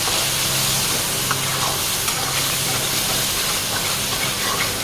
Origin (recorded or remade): recorded